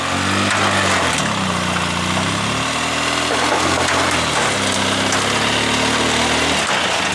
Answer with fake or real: real